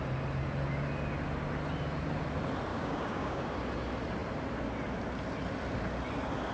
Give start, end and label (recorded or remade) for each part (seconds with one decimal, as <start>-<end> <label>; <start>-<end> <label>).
0.0-2.7 recorded; 2.7-3.4 remade; 3.4-6.5 recorded